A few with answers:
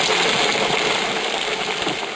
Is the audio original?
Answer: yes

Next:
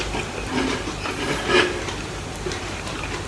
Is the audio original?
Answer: yes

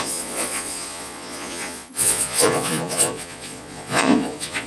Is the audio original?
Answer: no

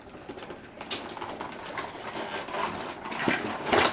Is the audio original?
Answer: yes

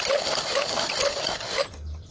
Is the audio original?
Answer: yes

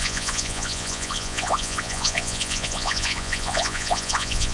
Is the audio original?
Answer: no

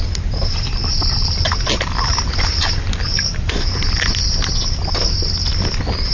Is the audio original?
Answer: yes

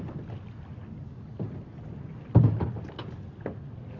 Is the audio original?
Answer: yes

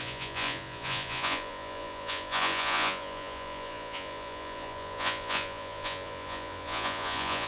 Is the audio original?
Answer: no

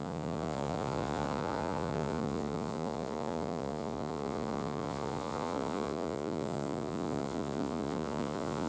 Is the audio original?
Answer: no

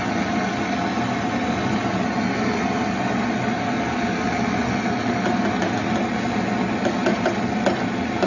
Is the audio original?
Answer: yes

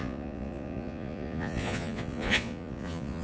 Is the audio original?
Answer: no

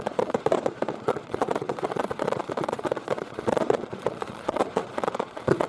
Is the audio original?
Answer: no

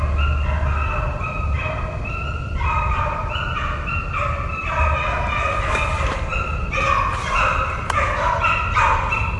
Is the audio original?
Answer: yes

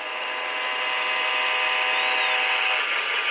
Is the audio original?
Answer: yes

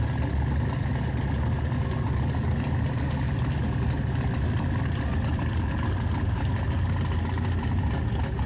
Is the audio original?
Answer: yes